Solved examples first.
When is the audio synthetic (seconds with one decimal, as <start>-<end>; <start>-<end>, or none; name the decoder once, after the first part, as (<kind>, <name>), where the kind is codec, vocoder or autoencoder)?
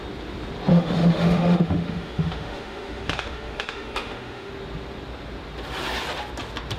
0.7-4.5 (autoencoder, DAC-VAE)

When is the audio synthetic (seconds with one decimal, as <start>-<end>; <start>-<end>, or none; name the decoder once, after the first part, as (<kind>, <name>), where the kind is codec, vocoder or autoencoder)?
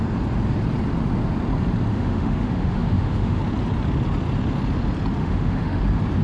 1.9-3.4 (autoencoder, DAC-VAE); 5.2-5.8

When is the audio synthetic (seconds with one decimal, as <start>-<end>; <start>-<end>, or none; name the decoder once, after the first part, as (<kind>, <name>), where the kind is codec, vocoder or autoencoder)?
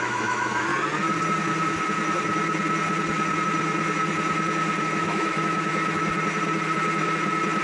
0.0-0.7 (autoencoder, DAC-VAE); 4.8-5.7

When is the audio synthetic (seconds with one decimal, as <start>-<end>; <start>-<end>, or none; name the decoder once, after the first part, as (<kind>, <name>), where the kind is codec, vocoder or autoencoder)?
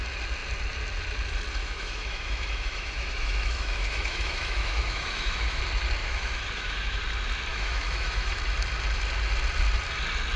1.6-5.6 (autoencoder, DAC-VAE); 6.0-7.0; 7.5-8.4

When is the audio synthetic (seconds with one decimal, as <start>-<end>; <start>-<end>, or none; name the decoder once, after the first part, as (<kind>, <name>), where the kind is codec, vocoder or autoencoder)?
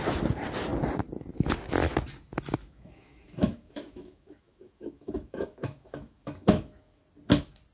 2.6-7.0 (autoencoder, DAC-VAE)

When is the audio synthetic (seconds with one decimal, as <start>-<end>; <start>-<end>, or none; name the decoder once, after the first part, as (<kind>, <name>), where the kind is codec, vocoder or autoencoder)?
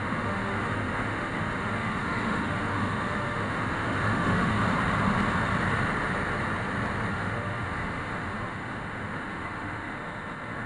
0.0-4.6 (autoencoder, DAC-VAE); 7.1-10.7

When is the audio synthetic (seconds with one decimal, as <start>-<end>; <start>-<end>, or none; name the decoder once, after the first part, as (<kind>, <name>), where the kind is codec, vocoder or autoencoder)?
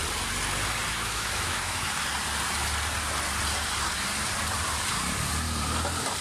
1.0-1.9 (autoencoder, DAC-VAE)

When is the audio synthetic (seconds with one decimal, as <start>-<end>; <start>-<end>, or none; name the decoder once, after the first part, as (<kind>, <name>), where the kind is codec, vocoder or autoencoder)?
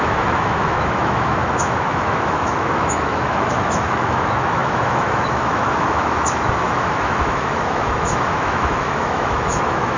0.0-10.0 (autoencoder, DAC-VAE)